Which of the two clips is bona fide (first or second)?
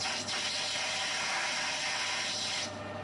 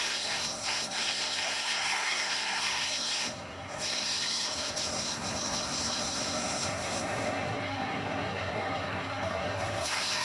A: first